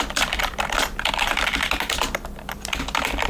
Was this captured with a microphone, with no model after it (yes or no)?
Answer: no